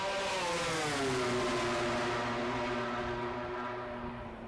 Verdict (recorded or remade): recorded